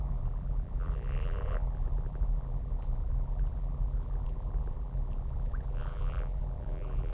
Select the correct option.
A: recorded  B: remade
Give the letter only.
B